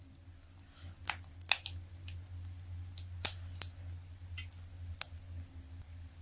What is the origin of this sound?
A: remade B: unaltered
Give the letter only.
B